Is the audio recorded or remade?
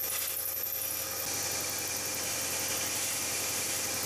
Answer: recorded